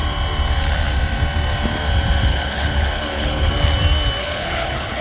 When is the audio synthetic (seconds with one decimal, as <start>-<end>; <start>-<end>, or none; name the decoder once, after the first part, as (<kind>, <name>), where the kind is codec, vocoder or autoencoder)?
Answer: 2.3-3.5 (codec, HILCodec); 4.2-5.0